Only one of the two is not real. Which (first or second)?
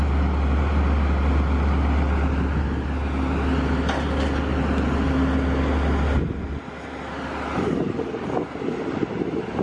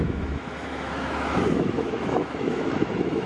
second